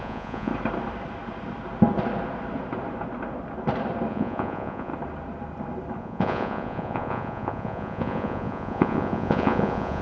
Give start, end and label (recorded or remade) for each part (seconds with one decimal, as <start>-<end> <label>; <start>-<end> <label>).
0.0-0.5 remade; 0.5-4.1 recorded; 4.1-4.9 remade; 4.9-6.0 recorded; 6.0-10.0 remade